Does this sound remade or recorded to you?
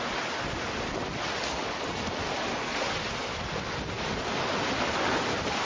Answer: recorded